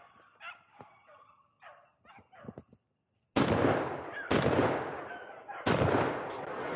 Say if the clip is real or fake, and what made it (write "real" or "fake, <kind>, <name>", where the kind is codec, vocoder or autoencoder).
real